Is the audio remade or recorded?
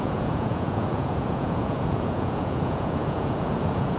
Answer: remade